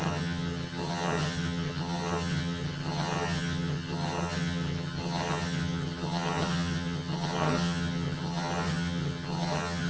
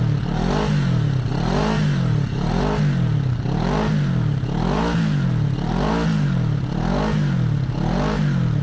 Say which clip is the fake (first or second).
first